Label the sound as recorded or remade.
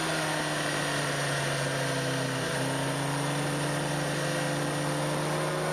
recorded